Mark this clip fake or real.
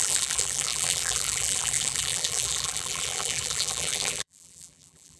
fake